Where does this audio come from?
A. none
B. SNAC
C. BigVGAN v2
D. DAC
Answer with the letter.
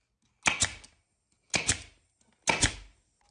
A